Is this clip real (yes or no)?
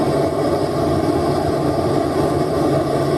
yes